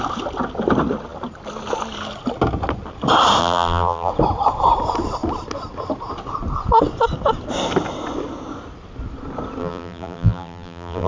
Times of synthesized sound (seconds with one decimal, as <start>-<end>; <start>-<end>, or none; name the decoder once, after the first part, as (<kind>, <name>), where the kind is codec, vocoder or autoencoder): 3.4-4.1 (vocoder, BigVGAN v2); 9.6-11.1

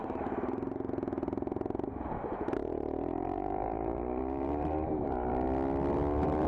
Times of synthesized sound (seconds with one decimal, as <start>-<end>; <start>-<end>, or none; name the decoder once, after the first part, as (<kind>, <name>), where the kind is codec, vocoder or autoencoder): 0.0-0.9 (vocoder, BigVGAN v2); 2.6-5.3

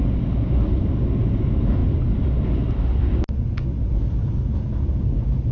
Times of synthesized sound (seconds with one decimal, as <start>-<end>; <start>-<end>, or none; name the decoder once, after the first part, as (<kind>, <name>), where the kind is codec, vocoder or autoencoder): none

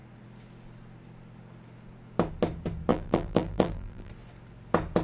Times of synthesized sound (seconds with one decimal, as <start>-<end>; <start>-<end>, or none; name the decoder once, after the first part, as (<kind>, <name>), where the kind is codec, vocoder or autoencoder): 2.9-4.1 (vocoder, BigVGAN v2)

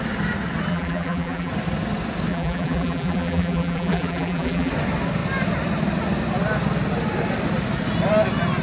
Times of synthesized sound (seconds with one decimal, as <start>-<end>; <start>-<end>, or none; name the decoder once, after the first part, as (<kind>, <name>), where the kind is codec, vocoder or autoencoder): 0.7-1.5 (vocoder, BigVGAN v2); 2.3-4.7

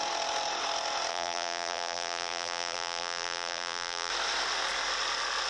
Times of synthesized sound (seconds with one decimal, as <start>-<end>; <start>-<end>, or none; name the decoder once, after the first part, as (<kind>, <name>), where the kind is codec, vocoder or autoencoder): 1.1-4.1 (vocoder, BigVGAN v2)

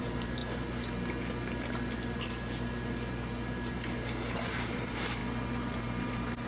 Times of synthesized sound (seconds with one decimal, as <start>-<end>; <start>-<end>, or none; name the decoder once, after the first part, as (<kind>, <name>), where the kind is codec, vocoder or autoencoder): 0.0-0.4 (vocoder, BigVGAN v2); 4.3-5.2; 5.8-6.5